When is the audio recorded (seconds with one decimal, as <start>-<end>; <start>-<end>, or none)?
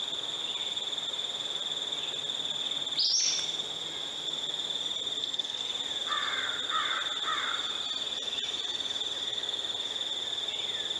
0.0-5.2; 5.7-11.0